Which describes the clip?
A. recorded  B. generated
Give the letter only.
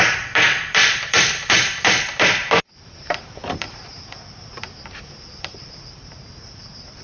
B